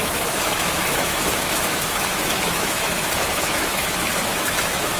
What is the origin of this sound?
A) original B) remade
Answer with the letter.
B